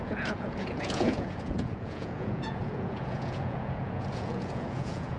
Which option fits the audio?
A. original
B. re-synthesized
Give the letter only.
B